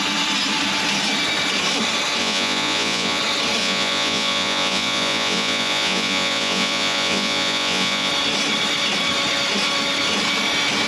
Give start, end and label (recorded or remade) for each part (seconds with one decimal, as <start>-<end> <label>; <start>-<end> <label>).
0.0-2.2 recorded; 2.2-3.2 remade; 3.2-3.6 recorded; 3.6-8.1 remade; 8.1-10.9 recorded